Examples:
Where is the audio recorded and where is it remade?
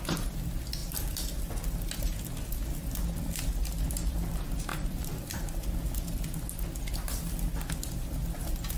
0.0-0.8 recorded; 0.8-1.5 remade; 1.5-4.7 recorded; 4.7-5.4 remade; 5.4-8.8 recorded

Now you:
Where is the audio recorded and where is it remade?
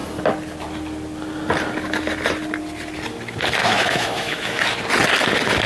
0.0-3.6 recorded; 3.6-4.6 remade; 4.6-5.7 recorded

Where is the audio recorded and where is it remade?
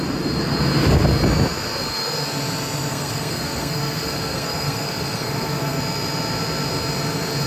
0.0-2.9 recorded; 2.9-5.8 remade; 5.8-7.5 recorded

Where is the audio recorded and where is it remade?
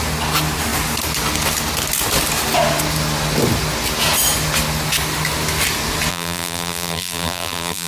0.0-6.1 recorded; 6.1-7.9 remade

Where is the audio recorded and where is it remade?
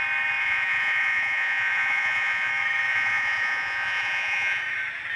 0.0-0.4 recorded; 0.4-2.5 remade; 2.5-2.9 recorded; 2.9-4.6 remade; 4.6-5.2 recorded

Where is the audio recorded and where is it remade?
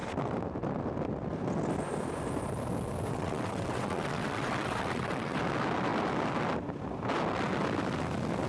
0.0-3.1 recorded; 3.1-5.4 remade; 5.4-8.5 recorded